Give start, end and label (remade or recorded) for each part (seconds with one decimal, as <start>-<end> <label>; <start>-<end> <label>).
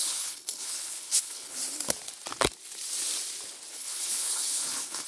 0.0-1.6 remade; 1.6-3.7 recorded; 3.7-5.1 remade